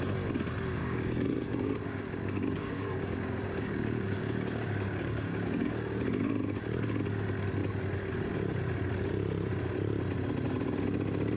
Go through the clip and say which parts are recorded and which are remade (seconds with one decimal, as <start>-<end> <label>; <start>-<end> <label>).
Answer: 0.0-0.8 recorded; 0.8-5.7 remade; 5.7-11.4 recorded